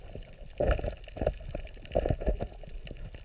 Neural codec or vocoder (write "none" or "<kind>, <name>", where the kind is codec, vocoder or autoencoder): vocoder, BigVGAN v2